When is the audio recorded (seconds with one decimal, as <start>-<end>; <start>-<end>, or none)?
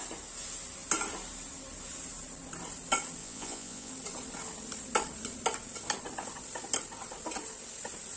0.0-3.2; 3.9-8.2